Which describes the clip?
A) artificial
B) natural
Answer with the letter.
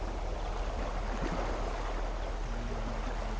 B